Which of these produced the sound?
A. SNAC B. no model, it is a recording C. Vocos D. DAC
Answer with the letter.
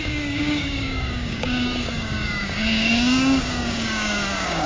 D